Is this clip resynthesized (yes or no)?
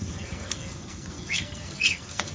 yes